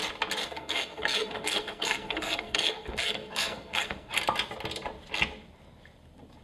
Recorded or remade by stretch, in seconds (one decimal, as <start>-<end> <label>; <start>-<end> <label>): 0.0-0.4 recorded; 0.4-4.2 remade; 4.2-6.4 recorded